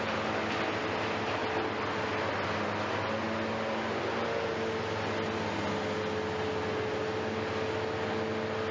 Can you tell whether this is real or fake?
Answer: real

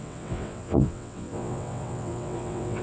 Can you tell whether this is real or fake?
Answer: fake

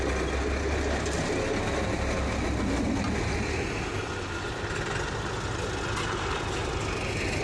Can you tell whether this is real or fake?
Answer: real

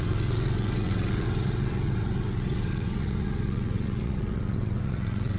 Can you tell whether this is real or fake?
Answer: fake